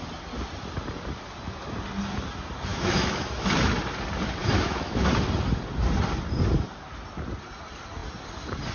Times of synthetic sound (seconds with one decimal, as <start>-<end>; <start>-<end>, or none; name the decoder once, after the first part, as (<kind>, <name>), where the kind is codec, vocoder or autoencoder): 2.7-3.5 (autoencoder, DAC-VAE); 4.4-5.1